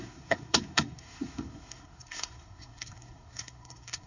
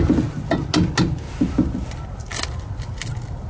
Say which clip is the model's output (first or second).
first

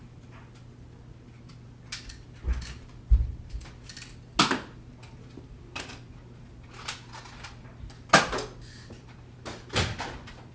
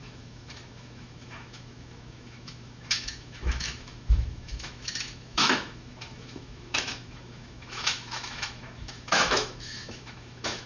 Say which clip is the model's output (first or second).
second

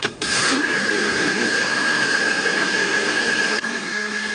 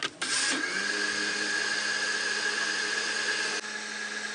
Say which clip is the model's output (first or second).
first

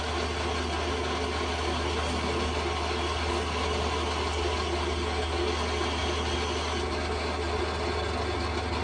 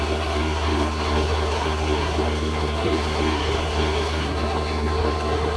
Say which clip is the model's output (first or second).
second